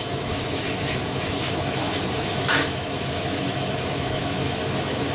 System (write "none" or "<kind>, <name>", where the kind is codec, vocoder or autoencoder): autoencoder, DAC-VAE